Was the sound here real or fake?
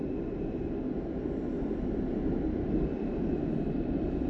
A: real